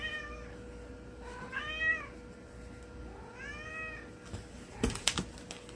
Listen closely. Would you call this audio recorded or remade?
recorded